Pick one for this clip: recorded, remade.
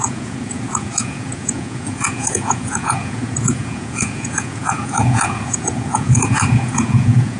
remade